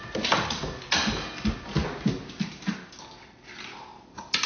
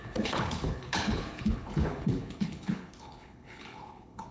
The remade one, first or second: second